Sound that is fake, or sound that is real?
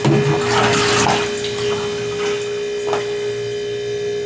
real